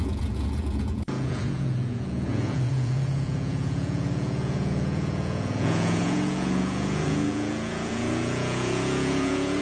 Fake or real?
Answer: fake